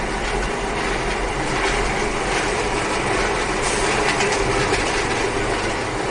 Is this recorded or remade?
recorded